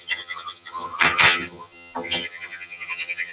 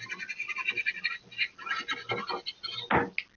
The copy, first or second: first